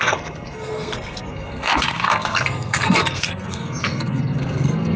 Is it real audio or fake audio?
fake